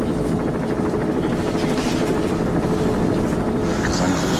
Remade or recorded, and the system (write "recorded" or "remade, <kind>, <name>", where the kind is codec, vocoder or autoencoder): recorded